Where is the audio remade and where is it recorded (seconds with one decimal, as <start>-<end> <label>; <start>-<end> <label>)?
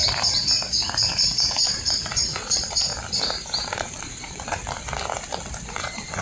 0.0-1.4 recorded; 1.4-2.9 remade; 2.9-3.6 recorded; 3.6-4.6 remade; 4.6-5.7 recorded; 5.7-6.2 remade